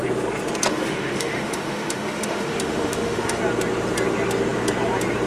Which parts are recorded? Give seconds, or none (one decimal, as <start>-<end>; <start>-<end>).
0.0-0.7; 3.4-5.3